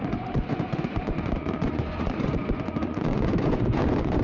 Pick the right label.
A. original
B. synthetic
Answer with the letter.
B